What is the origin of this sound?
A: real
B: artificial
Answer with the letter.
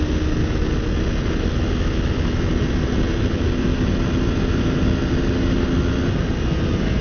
A